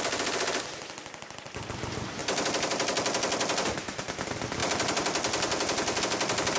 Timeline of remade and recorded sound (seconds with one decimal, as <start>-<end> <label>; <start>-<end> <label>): 0.0-6.6 recorded